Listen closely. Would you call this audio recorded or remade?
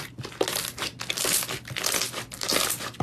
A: recorded